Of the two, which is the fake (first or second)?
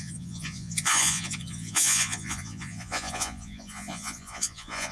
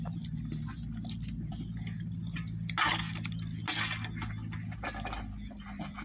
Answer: first